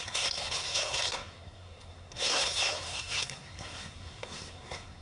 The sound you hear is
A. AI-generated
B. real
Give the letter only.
A